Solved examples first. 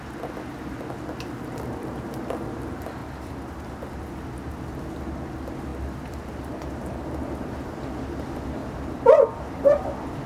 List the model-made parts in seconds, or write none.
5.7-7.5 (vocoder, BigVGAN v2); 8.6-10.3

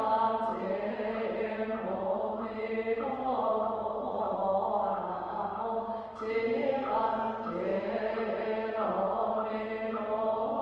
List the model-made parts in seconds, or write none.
0.5-4.6 (vocoder, Vocos); 7.7-9.9

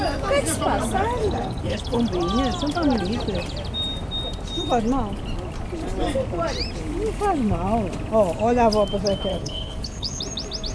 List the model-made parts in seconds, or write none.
1.2-2.0 (codec, HILCodec); 9.3-10.2

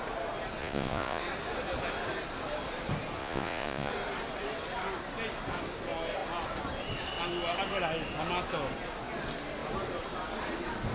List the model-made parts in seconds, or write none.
0.6-1.2 (vocoder, Vocos); 3.2-3.9

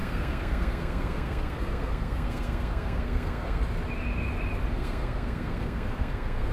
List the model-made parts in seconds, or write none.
0.0-3.6 (codec, SNAC); 4.7-6.5

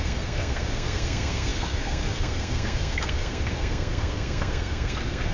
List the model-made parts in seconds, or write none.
0.0-5.3 (codec, SNAC)